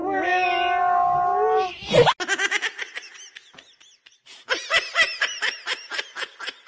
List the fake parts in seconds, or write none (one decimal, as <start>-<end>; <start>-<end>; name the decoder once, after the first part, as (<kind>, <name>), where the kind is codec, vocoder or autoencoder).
none